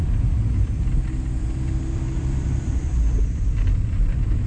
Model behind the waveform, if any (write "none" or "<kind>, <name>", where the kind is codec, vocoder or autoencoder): vocoder, BigVGAN v2